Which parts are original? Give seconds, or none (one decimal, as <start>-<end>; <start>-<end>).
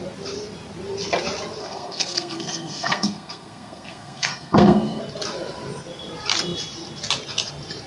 0.0-1.6; 5.0-7.9